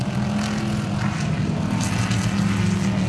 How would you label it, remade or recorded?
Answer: recorded